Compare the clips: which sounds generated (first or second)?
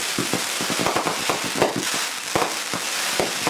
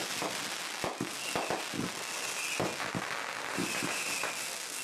first